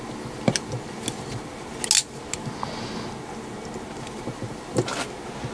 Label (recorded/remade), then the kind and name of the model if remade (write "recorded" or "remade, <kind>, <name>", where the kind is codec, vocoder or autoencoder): recorded